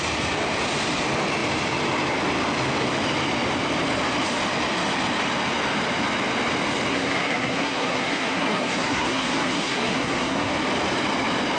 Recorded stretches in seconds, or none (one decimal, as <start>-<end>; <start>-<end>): 0.0-6.9; 10.5-11.6